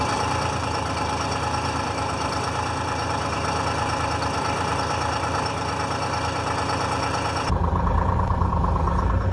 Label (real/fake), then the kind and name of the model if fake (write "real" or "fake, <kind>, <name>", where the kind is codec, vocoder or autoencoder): fake, vocoder, BigVGAN v2